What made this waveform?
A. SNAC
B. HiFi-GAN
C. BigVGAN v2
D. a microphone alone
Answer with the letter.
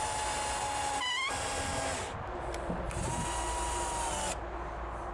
D